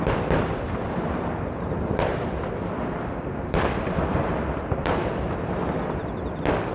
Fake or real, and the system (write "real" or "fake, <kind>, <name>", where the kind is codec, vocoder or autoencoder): fake, vocoder, BigVGAN v2